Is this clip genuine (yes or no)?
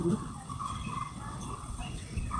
no